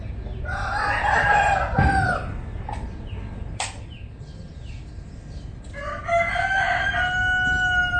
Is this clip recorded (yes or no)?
yes